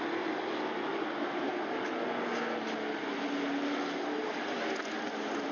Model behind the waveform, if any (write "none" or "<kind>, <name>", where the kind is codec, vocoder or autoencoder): none